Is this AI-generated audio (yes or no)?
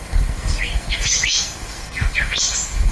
yes